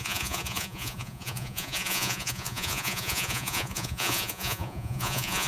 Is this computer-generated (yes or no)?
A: yes